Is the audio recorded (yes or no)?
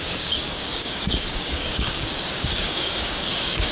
no